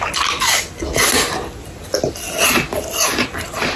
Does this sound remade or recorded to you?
recorded